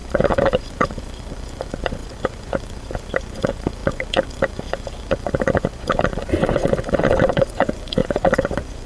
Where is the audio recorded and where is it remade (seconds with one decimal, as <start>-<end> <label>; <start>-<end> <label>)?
0.0-8.9 remade